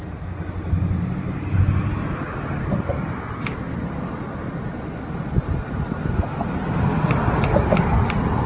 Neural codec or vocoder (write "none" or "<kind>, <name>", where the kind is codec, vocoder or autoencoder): none